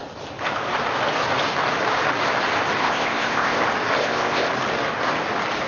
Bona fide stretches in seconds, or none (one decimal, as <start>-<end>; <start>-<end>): 0.0-2.8; 3.6-4.0; 4.5-5.7